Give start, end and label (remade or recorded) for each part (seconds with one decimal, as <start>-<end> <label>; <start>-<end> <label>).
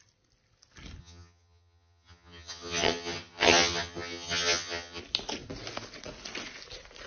0.0-1.0 recorded; 1.0-5.0 remade; 5.0-7.1 recorded